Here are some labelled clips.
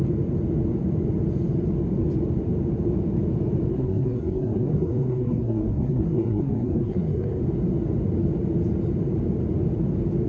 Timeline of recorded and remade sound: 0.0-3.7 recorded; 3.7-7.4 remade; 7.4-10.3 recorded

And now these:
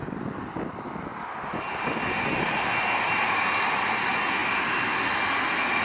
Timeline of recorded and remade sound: 0.0-5.8 recorded

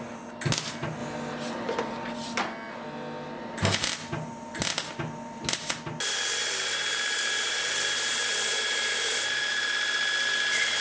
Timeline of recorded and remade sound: 0.0-6.4 recorded; 6.4-9.7 remade; 9.7-10.8 recorded

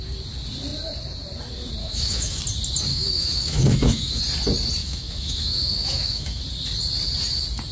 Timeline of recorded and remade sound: 0.0-1.8 recorded; 1.8-2.4 remade; 2.4-2.9 recorded; 2.9-4.2 remade; 4.2-4.8 recorded; 4.8-6.4 remade; 6.4-7.7 recorded

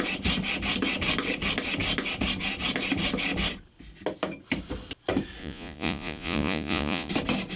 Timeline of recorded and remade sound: 0.0-5.4 recorded; 5.4-7.1 remade; 7.1-7.6 recorded